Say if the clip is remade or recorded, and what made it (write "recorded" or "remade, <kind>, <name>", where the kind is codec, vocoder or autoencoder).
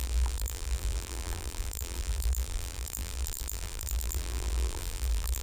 remade, vocoder, BigVGAN v2